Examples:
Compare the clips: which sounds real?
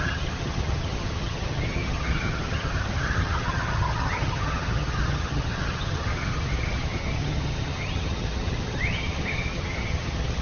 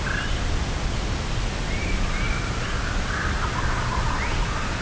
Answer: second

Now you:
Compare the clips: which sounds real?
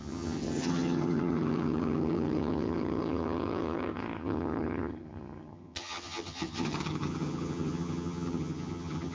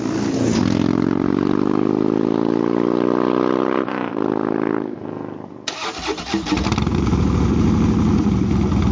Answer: second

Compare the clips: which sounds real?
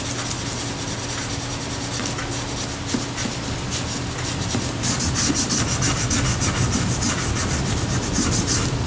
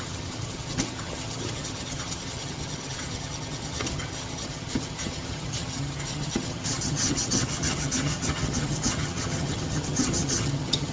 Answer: first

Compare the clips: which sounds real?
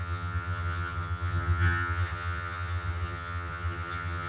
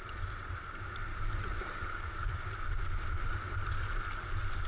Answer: second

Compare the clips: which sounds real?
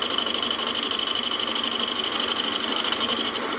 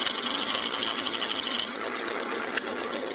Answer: first